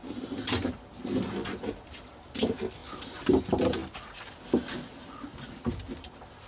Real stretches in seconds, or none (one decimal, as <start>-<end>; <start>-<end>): 0.0-6.5